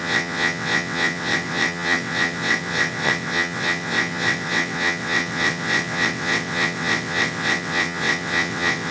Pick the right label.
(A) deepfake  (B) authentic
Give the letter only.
A